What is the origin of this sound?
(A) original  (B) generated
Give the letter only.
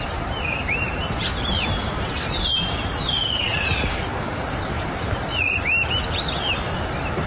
B